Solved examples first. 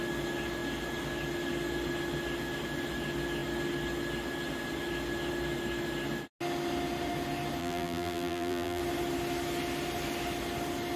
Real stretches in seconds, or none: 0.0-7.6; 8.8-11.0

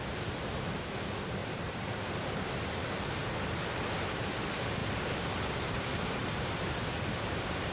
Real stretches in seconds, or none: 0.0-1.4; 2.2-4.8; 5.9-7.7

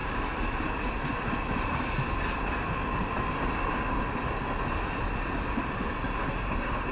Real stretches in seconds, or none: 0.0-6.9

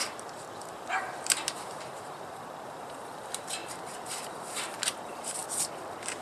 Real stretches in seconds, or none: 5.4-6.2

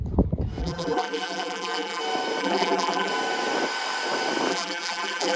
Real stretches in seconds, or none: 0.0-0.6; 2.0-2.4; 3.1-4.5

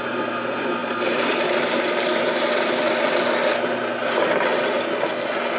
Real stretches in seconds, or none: 0.0-0.8; 2.7-4.0; 4.8-5.6